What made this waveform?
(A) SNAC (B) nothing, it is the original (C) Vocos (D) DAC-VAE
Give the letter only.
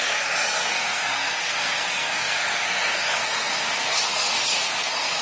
A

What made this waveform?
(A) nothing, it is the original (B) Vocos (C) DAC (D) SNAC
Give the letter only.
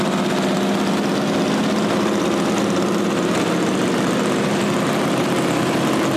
A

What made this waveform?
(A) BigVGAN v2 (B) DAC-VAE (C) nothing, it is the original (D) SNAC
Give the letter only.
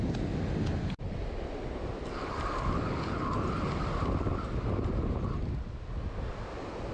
C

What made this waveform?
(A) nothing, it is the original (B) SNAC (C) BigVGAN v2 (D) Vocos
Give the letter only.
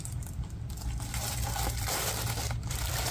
C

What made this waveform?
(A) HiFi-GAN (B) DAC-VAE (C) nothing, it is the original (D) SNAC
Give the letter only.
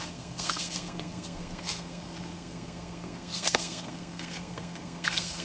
D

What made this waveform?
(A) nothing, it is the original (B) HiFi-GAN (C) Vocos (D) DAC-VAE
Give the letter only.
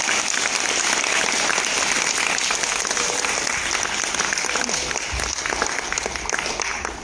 A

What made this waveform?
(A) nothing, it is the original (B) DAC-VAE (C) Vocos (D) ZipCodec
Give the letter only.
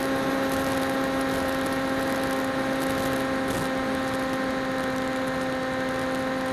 A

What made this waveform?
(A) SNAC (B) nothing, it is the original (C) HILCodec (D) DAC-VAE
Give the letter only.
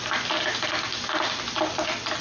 B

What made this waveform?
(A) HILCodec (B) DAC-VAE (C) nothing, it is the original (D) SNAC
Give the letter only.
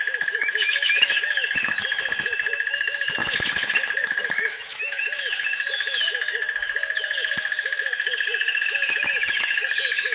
B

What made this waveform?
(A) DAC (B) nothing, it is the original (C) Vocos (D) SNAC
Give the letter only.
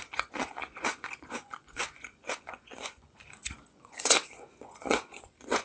C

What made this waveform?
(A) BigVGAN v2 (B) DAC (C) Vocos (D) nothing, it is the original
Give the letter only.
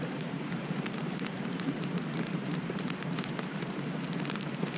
A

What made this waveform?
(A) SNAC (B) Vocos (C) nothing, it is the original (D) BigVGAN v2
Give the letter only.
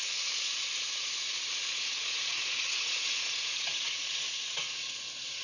B